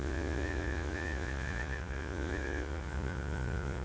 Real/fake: fake